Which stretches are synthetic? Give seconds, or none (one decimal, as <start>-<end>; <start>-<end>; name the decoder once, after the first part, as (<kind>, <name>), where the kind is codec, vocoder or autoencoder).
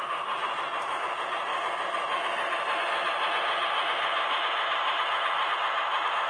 none